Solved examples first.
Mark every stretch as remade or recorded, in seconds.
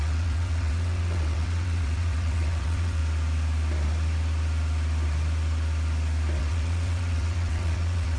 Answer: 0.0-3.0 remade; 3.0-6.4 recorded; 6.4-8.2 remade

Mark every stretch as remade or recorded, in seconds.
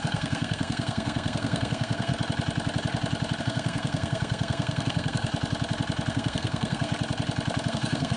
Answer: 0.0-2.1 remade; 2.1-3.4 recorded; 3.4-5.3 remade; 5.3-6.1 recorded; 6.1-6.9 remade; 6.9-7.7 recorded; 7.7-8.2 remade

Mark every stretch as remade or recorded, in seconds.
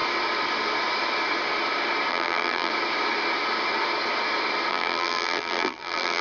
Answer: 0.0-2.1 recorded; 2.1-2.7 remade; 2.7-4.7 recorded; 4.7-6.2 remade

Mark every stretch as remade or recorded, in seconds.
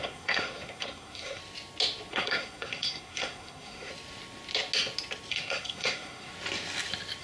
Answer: 0.0-1.4 remade; 1.4-2.1 recorded; 2.1-3.9 remade; 3.9-5.3 recorded; 5.3-6.3 remade; 6.3-7.2 recorded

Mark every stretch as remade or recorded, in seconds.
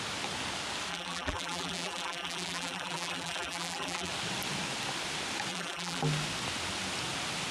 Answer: 0.0-0.9 recorded; 0.9-4.1 remade; 4.1-5.5 recorded; 5.5-6.0 remade; 6.0-7.5 recorded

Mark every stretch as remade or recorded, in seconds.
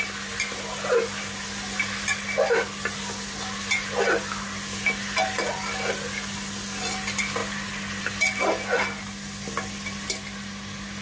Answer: 0.0-11.0 recorded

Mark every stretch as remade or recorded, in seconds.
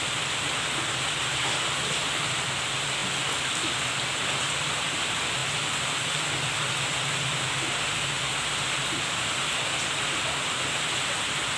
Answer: 0.0-11.6 recorded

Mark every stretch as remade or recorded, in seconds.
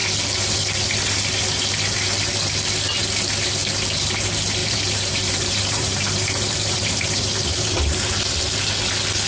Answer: 0.0-4.6 recorded; 4.6-8.2 remade; 8.2-9.3 recorded